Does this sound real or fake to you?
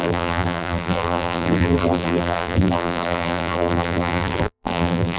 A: fake